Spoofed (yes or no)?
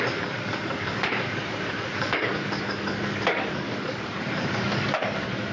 yes